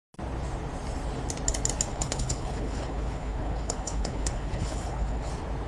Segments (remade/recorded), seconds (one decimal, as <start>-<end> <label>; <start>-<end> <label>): 0.0-1.9 recorded; 1.9-5.3 remade; 5.3-5.7 recorded